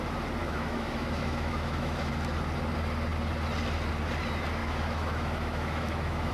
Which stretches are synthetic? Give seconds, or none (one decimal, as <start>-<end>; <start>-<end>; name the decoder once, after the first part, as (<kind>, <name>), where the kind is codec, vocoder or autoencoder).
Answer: 0.4-2.1 (autoencoder, DAC-VAE); 4.6-6.3